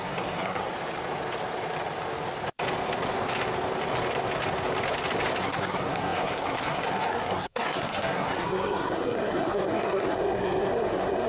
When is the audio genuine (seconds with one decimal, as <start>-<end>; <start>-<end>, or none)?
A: 0.7-5.4